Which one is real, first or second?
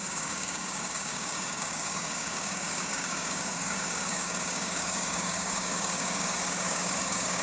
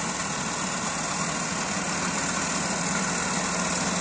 second